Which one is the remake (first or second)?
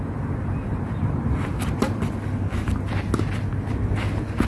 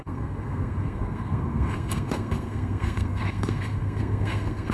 second